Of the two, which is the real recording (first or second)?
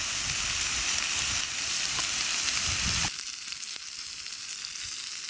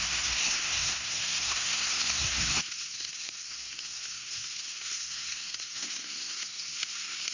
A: first